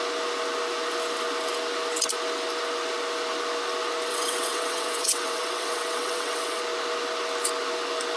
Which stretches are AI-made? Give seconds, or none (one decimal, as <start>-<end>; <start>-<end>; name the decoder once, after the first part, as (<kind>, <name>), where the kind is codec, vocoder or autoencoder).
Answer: 4.1-6.6 (vocoder, WaveNeXt)